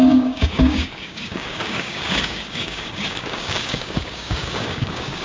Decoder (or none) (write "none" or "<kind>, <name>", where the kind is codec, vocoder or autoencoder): codec, DAC